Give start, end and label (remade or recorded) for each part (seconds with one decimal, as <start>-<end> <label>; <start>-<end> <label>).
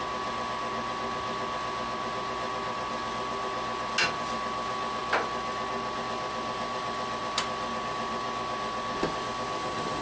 0.0-10.0 recorded